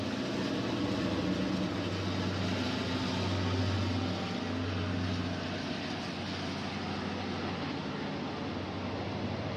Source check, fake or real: real